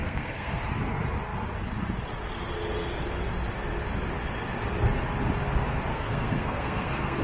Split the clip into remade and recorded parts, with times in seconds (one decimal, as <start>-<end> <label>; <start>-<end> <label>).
0.0-0.6 remade; 0.6-5.9 recorded; 5.9-7.2 remade